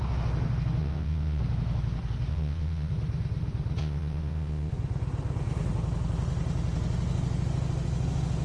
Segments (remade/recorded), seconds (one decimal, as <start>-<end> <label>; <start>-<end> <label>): 0.0-0.8 recorded; 0.8-1.4 remade; 1.4-2.3 recorded; 2.3-2.9 remade; 2.9-3.8 recorded; 3.8-4.7 remade; 4.7-8.4 recorded